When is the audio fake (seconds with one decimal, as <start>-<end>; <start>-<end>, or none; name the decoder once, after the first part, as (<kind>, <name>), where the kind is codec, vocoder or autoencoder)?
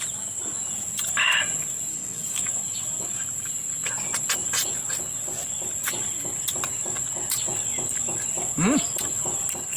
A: 1.9-2.4 (codec, DAC)